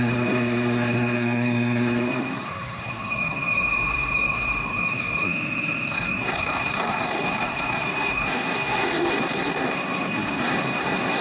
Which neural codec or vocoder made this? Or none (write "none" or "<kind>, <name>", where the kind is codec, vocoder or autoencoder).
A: codec, SNAC